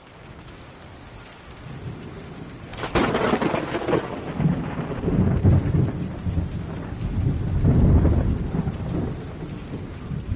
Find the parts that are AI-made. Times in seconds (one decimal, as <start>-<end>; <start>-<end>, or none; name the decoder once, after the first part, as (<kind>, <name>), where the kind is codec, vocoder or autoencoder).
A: none